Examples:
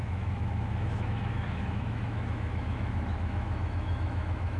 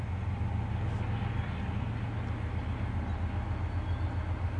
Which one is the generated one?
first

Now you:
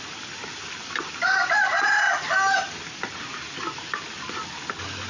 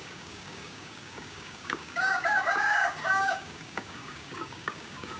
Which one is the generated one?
second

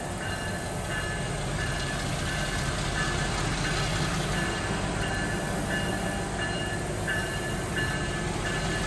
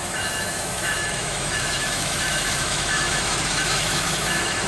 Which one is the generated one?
second